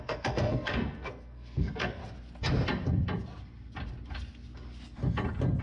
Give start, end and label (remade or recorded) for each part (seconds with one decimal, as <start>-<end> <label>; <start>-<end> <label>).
0.0-2.0 remade; 2.0-5.6 recorded